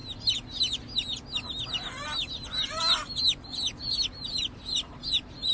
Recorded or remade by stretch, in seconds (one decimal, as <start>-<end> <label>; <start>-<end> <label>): 0.0-5.5 recorded